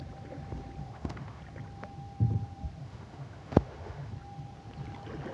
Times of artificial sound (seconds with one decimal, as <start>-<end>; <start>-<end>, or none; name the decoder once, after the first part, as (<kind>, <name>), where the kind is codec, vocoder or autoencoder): 0.8-1.4 (autoencoder, DAC-VAE); 2.8-4.1